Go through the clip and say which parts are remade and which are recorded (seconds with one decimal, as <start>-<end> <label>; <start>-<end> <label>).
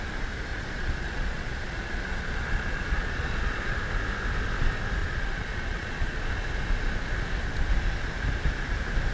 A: 0.0-0.5 recorded; 0.5-3.8 remade; 3.8-5.0 recorded; 5.0-6.2 remade; 6.2-9.1 recorded